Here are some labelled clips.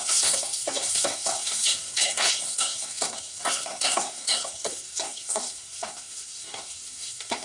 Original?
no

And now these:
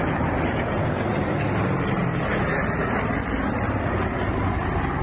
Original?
yes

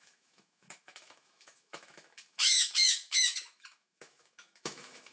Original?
no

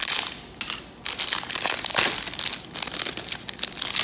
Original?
yes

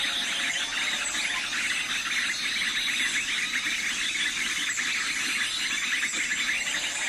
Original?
yes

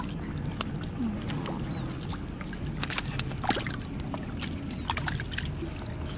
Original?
yes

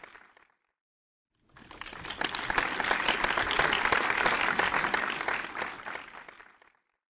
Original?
yes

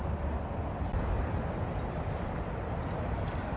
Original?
yes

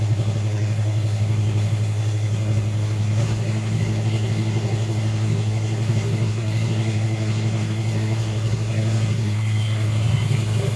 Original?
no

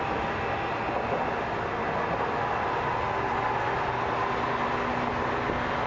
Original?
yes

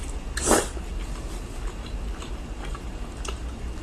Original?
yes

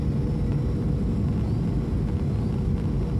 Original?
yes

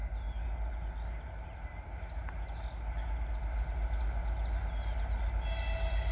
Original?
yes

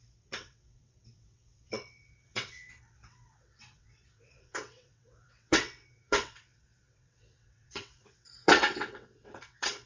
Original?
no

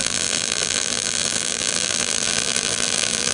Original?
no